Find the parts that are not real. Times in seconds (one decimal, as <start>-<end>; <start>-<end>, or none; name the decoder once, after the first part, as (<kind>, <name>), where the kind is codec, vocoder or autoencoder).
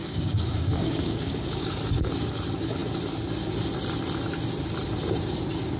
0.0-1.7 (codec, DAC)